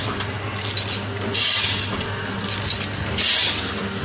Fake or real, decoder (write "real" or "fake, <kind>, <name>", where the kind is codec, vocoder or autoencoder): real